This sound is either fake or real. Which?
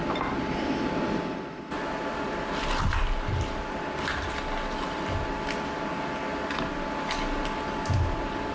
real